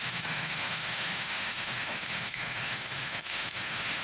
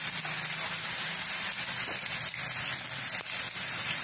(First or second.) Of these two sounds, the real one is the second